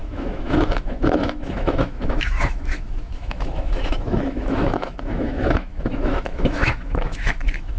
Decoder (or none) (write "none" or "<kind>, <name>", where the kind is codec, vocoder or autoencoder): autoencoder, DAC-VAE